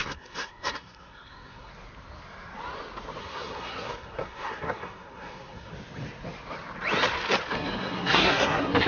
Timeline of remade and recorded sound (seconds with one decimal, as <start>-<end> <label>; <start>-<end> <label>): 0.0-1.7 remade; 1.7-3.2 recorded; 3.2-5.7 remade; 5.7-7.5 recorded; 7.5-8.9 remade